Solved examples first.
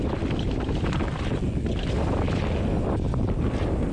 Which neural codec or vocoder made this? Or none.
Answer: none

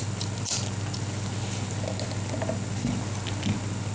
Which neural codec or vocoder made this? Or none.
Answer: none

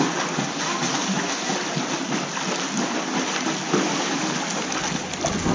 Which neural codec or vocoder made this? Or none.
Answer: none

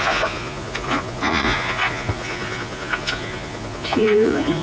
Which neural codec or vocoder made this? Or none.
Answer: vocoder, Vocos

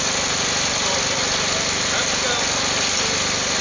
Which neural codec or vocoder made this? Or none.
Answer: none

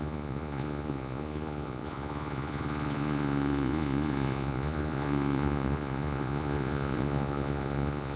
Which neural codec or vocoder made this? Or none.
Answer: vocoder, Vocos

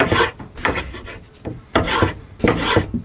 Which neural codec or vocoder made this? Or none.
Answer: none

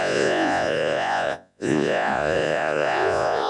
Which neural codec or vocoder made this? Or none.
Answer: vocoder, Vocos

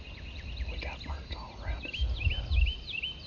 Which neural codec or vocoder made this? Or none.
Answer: none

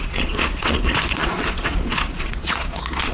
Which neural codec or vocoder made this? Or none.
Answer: vocoder, Vocos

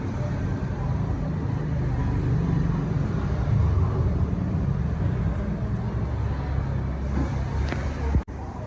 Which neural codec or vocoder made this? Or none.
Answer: none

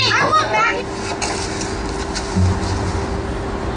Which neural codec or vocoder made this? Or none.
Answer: none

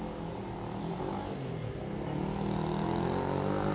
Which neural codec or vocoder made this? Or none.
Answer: none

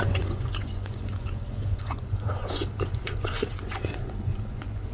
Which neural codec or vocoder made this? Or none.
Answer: vocoder, Vocos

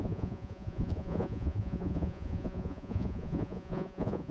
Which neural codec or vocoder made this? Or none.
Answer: vocoder, Vocos